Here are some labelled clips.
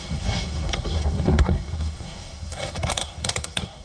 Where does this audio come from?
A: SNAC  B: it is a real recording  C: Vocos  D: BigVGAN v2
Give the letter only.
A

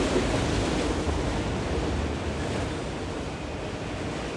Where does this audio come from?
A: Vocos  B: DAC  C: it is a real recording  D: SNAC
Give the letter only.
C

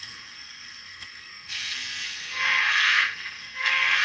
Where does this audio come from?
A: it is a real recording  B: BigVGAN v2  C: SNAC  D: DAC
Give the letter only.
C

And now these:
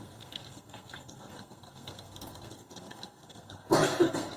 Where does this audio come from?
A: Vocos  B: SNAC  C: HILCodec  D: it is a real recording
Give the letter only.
B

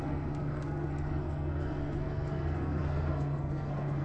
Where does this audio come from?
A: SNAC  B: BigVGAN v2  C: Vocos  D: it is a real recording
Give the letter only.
A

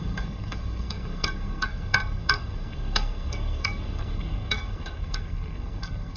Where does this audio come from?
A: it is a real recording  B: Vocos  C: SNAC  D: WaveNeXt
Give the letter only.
C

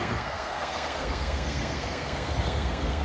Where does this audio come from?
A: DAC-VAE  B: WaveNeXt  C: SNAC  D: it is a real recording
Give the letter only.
C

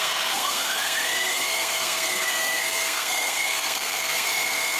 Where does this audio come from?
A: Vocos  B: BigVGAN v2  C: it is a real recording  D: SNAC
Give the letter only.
D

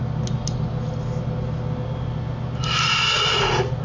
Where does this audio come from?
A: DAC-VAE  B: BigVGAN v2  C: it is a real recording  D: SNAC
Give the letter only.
C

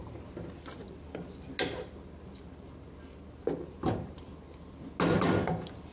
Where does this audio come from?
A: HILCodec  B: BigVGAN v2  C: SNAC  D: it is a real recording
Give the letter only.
D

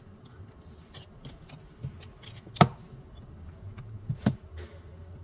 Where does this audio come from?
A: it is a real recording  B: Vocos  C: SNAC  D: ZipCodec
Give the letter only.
A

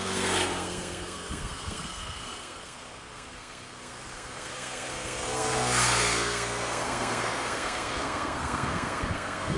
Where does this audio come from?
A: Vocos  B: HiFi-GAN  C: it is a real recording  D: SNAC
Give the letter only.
D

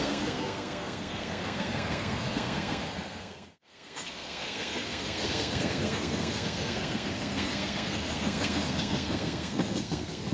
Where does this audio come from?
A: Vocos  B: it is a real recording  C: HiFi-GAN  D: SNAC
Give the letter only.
D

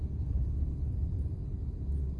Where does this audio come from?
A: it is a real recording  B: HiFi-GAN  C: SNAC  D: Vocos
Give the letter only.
A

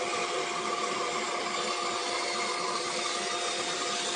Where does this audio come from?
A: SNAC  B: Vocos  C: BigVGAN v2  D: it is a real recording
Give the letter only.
D